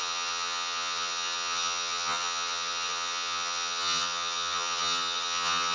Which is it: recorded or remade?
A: remade